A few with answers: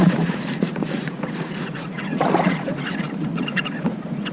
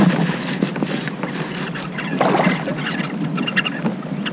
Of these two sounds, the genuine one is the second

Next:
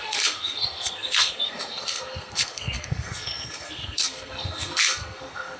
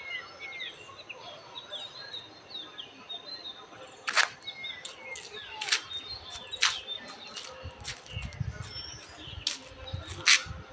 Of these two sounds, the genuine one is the second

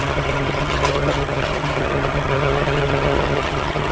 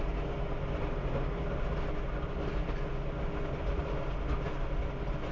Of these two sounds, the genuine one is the second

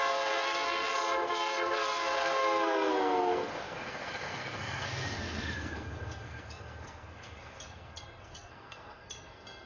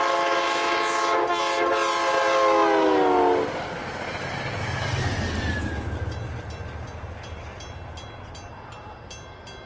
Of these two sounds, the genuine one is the second